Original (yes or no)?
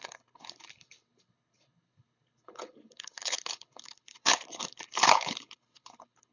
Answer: no